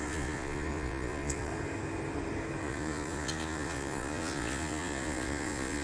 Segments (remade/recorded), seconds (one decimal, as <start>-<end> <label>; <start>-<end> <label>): 0.0-1.5 remade; 1.5-2.6 recorded; 2.6-5.8 remade